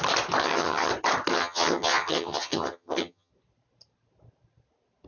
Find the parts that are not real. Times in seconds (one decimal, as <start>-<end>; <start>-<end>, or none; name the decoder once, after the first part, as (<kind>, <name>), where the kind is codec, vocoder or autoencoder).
0.4-0.9 (vocoder, HiFi-GAN); 1.3-3.3